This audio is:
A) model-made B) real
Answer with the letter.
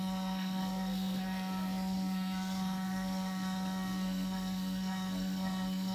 A